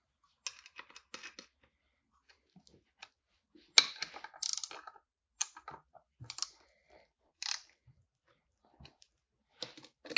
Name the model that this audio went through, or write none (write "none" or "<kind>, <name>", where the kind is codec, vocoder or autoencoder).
none